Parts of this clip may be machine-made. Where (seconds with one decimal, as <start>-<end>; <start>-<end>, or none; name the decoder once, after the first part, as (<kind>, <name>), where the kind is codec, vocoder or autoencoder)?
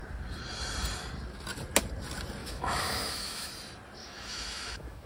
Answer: 2.4-3.5 (autoencoder, DAC-VAE); 4.0-5.1